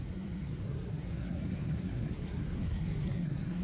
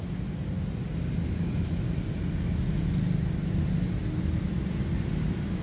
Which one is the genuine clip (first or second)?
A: second